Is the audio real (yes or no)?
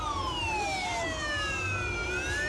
yes